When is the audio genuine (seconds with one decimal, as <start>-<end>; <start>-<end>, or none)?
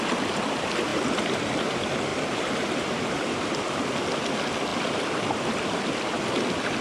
0.0-6.8